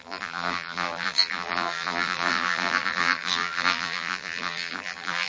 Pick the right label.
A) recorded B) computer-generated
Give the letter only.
B